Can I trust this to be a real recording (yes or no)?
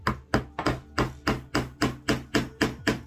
yes